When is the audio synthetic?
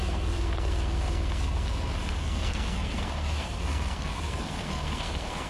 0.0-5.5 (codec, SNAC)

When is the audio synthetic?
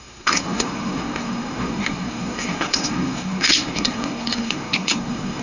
0.0-5.4 (codec, SNAC)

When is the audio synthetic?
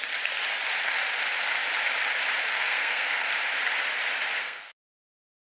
2.5-3.2 (codec, SNAC); 4.4-4.9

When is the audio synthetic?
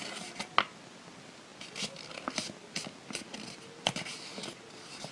none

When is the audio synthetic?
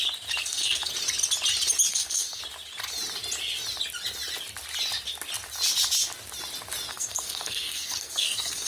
0.4-0.9 (codec, SNAC); 1.9-2.4; 6.9-8.7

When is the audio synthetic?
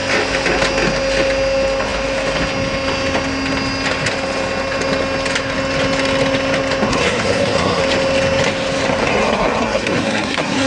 6.9-7.8 (codec, SNAC); 9.0-10.7